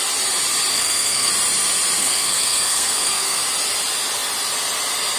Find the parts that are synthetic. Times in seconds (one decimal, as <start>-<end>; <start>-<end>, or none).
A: 0.7-1.3; 2.0-3.4